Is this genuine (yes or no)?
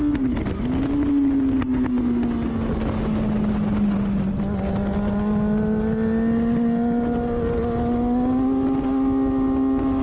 yes